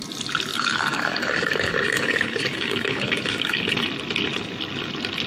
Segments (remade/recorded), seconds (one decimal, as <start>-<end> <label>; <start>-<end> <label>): 0.0-0.5 recorded; 0.5-3.7 remade; 3.7-5.3 recorded